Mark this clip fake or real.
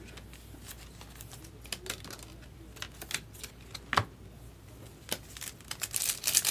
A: real